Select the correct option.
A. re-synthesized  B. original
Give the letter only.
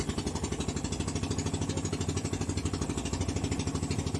B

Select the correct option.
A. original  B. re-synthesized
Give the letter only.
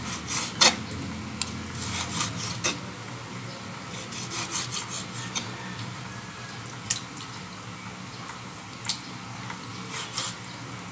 A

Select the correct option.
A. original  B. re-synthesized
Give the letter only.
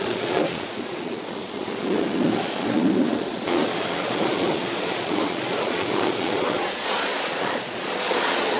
B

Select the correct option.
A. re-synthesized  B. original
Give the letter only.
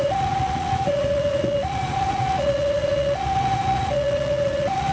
A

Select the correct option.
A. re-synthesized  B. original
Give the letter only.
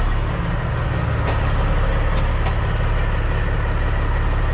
B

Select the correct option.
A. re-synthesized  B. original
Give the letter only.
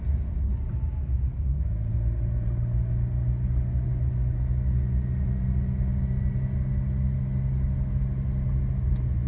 B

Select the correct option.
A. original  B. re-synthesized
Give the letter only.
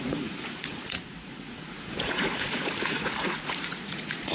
B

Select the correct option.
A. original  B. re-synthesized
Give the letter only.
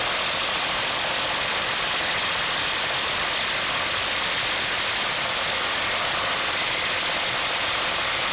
A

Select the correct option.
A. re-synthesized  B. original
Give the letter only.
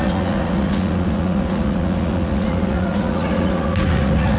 A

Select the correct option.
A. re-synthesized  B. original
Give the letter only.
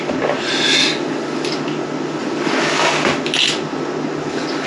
B